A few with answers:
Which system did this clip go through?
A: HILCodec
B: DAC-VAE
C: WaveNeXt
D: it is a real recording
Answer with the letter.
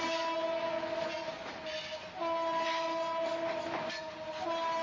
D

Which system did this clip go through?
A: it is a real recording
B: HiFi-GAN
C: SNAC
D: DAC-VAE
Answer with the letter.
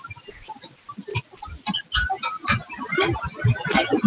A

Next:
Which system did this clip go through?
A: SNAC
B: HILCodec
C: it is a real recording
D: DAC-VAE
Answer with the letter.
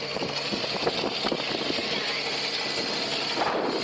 C